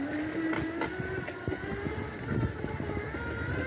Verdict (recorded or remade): recorded